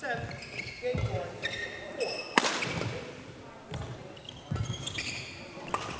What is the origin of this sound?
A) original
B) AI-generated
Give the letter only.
A